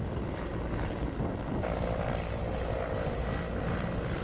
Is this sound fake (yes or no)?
no